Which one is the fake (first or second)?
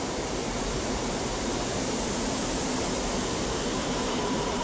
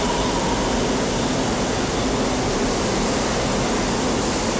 first